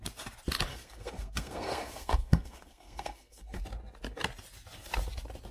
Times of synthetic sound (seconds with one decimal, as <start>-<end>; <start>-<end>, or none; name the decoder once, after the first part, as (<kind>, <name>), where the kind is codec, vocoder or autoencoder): 0.7-3.6 (codec, SNAC)